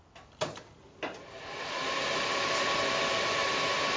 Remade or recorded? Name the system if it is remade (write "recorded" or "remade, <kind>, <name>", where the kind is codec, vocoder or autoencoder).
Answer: recorded